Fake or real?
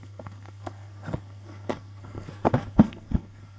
fake